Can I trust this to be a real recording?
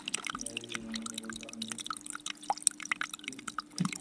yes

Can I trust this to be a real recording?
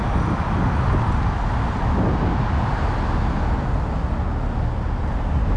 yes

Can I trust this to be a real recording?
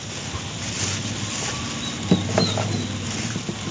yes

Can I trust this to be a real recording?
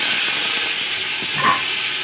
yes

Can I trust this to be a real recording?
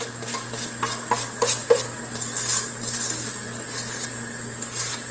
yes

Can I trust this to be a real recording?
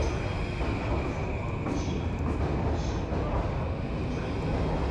yes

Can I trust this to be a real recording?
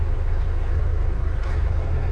no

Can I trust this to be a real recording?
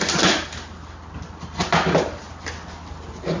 yes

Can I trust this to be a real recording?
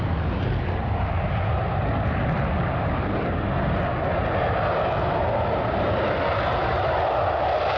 yes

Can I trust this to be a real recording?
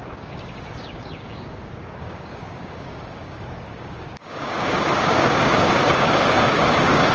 no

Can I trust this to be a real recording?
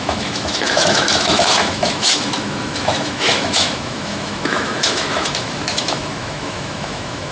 no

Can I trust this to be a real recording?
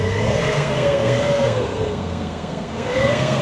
no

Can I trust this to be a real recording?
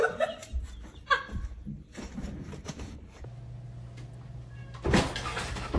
yes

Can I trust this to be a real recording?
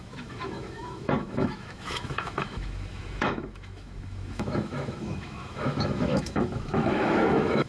no